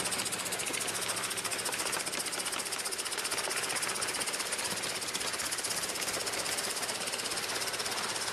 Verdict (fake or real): real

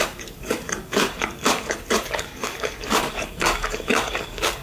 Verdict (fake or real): fake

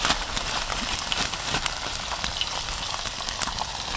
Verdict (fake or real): real